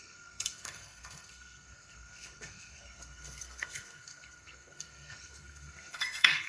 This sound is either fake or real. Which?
fake